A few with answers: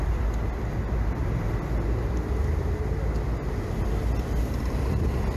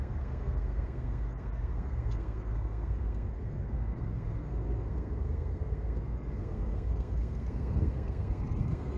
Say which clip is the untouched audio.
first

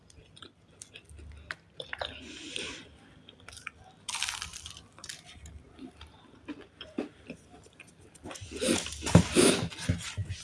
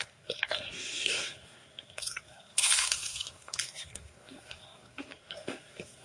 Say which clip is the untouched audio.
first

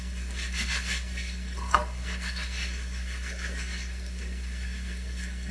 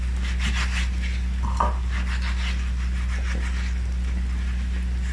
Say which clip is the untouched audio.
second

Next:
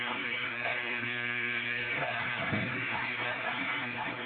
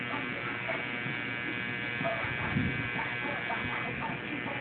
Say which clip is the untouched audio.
second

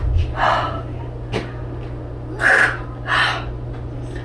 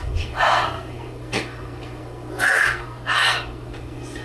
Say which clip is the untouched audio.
first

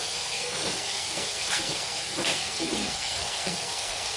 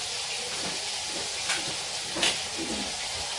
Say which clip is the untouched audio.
second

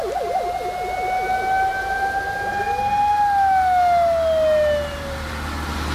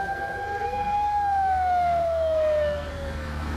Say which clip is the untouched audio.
first